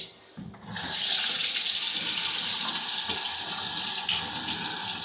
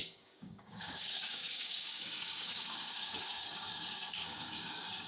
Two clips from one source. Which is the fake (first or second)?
second